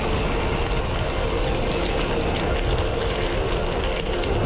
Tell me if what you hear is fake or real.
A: real